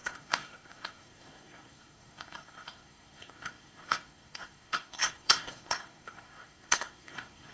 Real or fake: fake